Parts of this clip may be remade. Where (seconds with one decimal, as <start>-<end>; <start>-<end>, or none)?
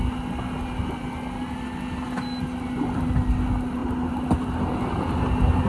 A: none